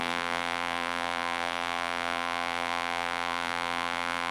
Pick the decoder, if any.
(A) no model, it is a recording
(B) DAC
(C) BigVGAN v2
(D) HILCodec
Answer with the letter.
C